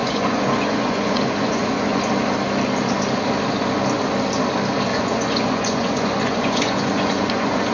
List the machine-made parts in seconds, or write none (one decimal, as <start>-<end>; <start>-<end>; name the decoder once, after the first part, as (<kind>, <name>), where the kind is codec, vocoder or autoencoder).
0.0-2.0 (vocoder, Vocos); 4.9-7.7